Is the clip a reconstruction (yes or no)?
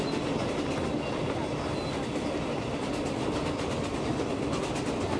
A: no